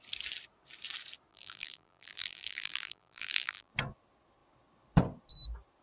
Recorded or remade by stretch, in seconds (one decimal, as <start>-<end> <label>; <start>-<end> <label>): 0.0-1.3 recorded; 1.3-3.7 remade; 3.7-5.8 recorded